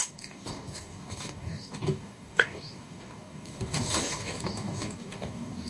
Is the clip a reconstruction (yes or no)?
yes